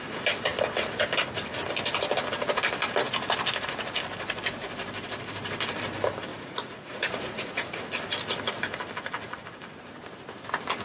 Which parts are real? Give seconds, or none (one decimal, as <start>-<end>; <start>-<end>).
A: 0.0-6.3; 7.5-10.8